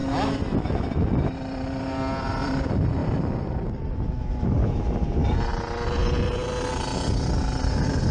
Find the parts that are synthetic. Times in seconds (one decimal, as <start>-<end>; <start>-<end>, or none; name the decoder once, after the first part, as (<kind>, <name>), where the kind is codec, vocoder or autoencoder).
none